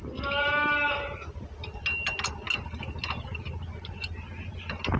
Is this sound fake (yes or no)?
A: no